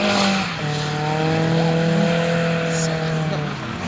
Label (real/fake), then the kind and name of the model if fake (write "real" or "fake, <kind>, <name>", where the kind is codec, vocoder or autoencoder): real